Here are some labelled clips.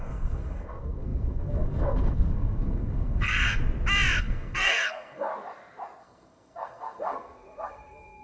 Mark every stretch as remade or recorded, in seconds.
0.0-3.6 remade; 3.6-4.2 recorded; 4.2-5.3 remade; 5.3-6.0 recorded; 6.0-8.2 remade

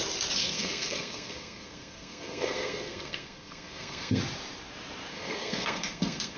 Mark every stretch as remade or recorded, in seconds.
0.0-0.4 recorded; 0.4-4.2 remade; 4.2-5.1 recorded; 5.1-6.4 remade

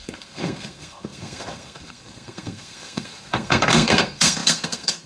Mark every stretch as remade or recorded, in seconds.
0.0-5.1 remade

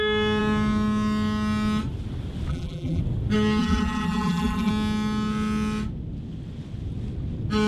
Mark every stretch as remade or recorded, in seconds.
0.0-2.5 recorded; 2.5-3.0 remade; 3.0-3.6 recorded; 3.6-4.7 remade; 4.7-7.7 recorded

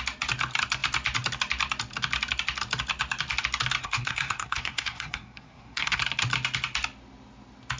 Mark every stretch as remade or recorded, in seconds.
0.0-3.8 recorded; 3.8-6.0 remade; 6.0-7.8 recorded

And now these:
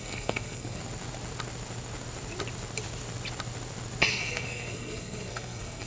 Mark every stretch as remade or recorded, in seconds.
0.0-0.8 remade; 0.8-4.1 recorded; 4.1-5.9 remade

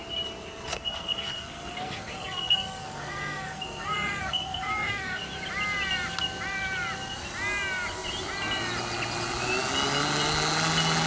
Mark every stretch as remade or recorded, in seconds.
0.0-0.7 recorded; 0.7-5.2 remade; 5.2-11.1 recorded

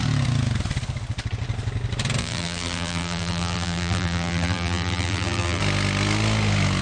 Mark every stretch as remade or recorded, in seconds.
0.0-2.2 recorded; 2.2-5.6 remade; 5.6-6.8 recorded